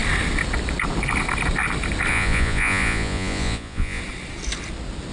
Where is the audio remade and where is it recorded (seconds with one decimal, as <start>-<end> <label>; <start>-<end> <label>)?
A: 0.0-2.1 recorded; 2.1-4.0 remade; 4.0-5.1 recorded

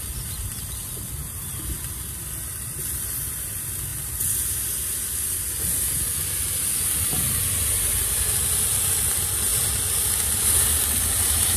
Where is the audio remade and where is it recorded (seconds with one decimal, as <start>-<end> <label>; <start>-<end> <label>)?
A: 0.0-11.6 recorded

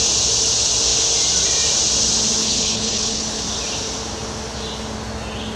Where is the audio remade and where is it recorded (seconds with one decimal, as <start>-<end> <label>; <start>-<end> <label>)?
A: 0.0-2.4 recorded; 2.4-3.4 remade; 3.4-5.6 recorded